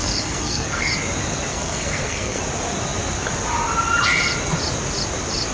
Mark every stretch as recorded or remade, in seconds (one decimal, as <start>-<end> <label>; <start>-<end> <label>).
0.0-0.9 remade; 0.9-1.5 recorded; 1.5-2.4 remade; 2.4-5.5 recorded